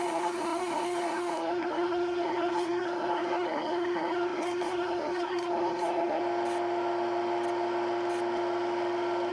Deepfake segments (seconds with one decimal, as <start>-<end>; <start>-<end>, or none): 0.0-6.2

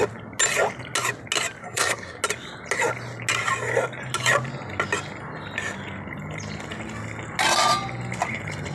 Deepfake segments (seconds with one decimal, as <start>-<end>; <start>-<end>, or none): 1.6-2.2

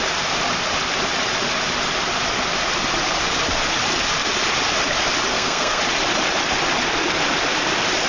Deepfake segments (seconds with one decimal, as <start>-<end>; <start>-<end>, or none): 5.3-5.8

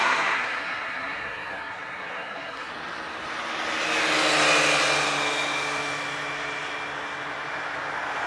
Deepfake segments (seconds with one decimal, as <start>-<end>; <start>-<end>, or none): 0.0-2.7

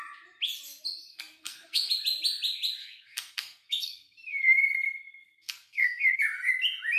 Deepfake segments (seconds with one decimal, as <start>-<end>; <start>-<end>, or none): 1.1-1.9; 2.8-6.2

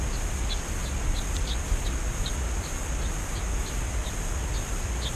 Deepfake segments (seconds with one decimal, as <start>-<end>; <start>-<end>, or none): none